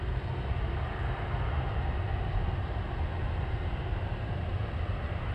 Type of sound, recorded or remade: recorded